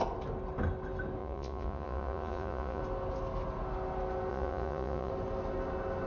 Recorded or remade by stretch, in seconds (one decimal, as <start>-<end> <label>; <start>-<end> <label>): 0.0-1.2 recorded; 1.2-2.8 remade; 2.8-4.3 recorded; 4.3-5.1 remade; 5.1-6.1 recorded